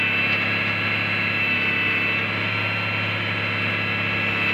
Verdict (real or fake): real